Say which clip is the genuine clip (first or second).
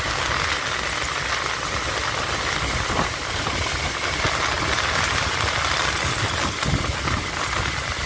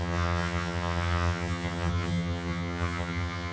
first